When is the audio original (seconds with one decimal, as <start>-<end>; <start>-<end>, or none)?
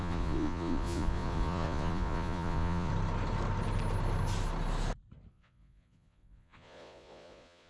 2.9-5.3